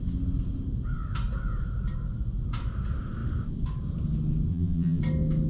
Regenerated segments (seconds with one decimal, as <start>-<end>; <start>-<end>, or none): 4.5-5.0